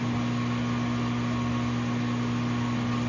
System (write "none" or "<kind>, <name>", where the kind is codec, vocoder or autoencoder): none